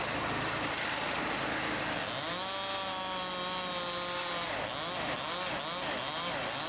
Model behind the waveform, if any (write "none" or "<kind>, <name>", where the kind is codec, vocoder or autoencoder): none